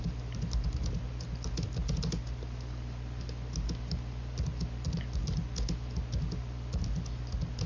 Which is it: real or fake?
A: real